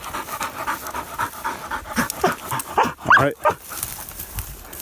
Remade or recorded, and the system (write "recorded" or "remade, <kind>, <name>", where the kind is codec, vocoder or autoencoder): recorded